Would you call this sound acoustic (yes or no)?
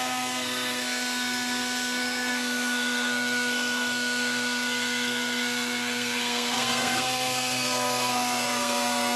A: no